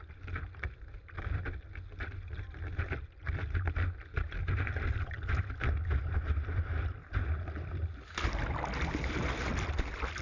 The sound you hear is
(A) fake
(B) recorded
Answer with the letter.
B